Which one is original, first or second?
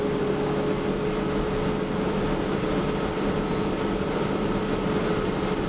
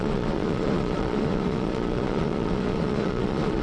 first